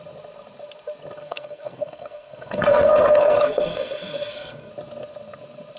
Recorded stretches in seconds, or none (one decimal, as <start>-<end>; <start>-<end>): 0.0-1.2; 4.7-5.8